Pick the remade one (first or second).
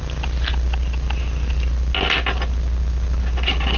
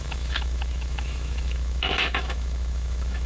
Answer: second